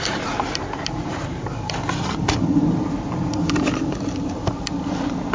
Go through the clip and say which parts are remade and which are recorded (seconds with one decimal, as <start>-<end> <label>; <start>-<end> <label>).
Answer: 0.0-5.3 recorded